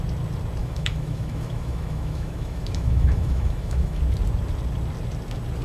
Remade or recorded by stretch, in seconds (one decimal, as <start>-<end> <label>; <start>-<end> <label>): 0.0-0.6 recorded; 0.6-4.0 remade; 4.0-5.6 recorded